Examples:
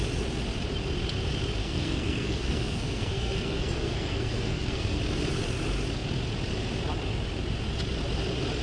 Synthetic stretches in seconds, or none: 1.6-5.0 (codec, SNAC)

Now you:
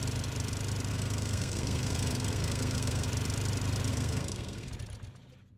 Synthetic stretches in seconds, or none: 0.9-3.1 (codec, SNAC); 3.9-4.7

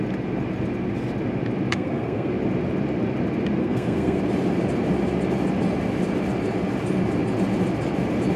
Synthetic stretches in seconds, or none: 1.7-2.3 (codec, SNAC); 3.6-4.2

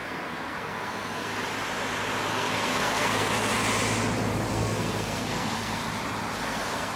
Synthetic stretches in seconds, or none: 0.0-1.3 (codec, SNAC); 2.3-3.5; 4.5-5.8; 6.4-7.0